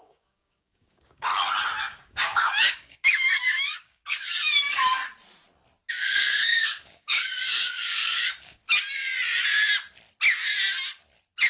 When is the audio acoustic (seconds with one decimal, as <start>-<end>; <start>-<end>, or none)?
1.3-1.8; 5.0-5.9; 8.6-11.5

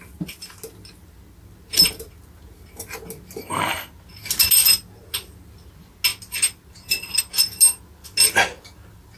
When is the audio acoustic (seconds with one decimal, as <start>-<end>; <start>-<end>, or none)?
0.0-3.4; 3.9-9.2

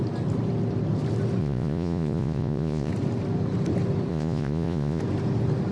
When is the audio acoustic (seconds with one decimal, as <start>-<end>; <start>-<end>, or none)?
0.0-1.4; 2.9-4.1; 5.0-5.7

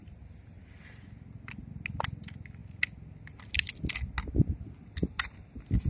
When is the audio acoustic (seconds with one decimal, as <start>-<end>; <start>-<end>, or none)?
0.0-5.9